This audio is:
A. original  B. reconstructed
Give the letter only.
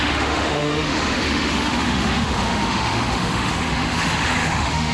B